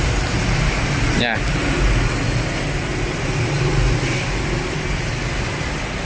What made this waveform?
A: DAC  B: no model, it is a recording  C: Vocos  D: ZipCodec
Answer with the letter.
B